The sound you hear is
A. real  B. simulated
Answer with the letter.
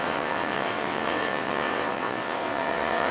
B